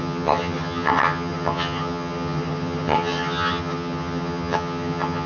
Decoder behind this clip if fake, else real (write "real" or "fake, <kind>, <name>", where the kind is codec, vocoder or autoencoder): fake, vocoder, HiFi-GAN